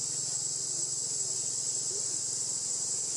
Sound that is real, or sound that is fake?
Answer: real